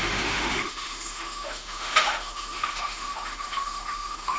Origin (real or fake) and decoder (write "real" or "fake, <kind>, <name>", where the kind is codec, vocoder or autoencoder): fake, autoencoder, DAC-VAE